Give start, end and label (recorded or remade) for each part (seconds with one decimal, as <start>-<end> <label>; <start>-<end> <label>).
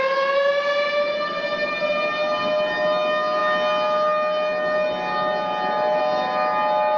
0.0-7.0 recorded